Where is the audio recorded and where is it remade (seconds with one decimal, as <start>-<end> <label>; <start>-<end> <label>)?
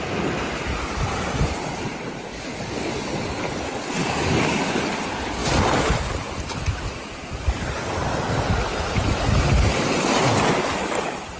0.0-2.3 recorded; 2.3-2.9 remade; 2.9-4.0 recorded; 4.0-4.7 remade; 4.7-11.4 recorded